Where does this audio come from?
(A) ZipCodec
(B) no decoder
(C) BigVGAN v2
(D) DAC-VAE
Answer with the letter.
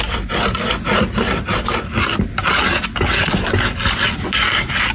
B